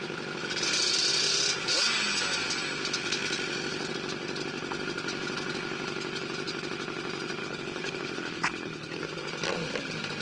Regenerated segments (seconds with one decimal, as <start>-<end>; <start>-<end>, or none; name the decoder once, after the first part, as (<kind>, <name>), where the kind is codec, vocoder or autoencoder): 7.4-9.0 (codec, HILCodec)